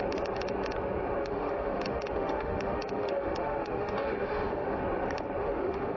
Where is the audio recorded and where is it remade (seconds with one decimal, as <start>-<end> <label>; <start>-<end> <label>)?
0.0-1.2 recorded; 1.2-4.8 remade; 4.8-5.4 recorded; 5.4-6.0 remade